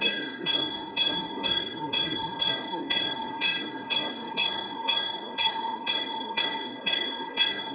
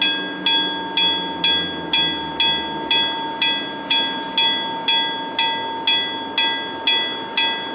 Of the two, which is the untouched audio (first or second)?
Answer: second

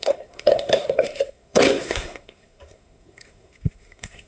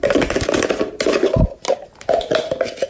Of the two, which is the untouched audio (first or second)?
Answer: second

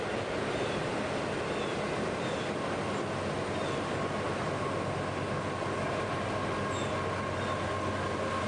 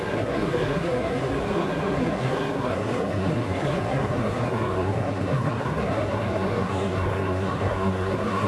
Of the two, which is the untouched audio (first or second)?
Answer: first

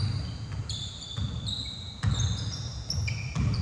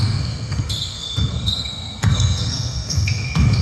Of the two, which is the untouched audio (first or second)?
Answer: first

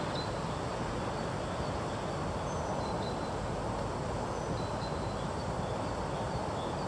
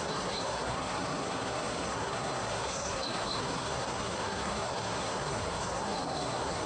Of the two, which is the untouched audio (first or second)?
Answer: first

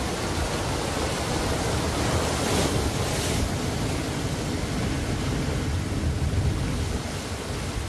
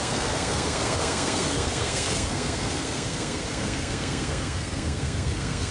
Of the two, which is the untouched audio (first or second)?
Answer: first